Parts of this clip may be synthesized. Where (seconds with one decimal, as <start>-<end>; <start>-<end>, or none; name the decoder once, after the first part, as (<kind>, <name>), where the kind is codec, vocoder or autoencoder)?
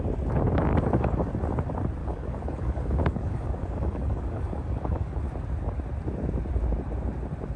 0.7-1.3 (codec, DAC); 2.0-5.2